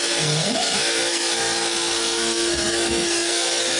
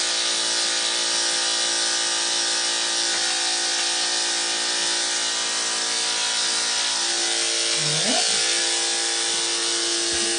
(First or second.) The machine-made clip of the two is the first